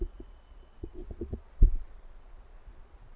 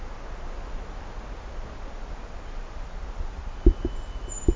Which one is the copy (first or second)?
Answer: first